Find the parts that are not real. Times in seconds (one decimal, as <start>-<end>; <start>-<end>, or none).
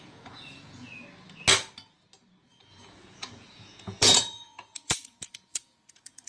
0.0-0.9; 2.4-6.3